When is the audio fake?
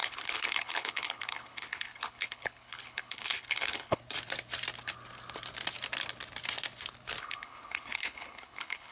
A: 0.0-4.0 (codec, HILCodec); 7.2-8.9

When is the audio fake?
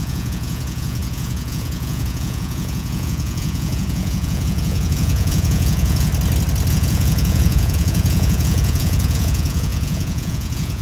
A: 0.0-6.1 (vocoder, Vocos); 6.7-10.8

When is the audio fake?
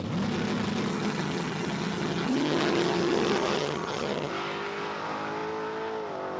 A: 0.9-4.3 (vocoder, HiFi-GAN)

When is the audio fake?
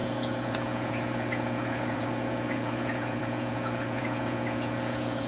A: 0.0-5.3 (vocoder, Vocos)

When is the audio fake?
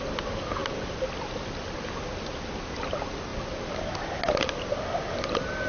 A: none